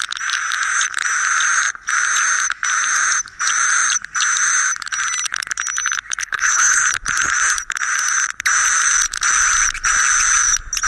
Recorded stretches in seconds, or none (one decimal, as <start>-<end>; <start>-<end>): 0.0-6.2; 6.8-10.9